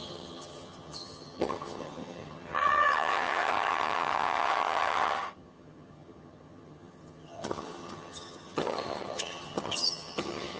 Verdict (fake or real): fake